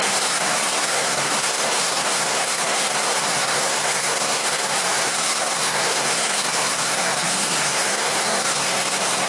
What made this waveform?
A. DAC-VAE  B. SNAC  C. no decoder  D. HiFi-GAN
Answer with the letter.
B